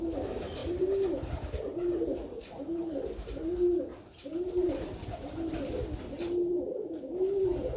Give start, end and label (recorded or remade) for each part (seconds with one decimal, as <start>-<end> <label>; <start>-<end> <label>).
0.0-0.6 recorded; 0.6-2.8 remade; 2.8-7.8 recorded